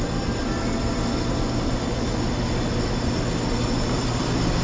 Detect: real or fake real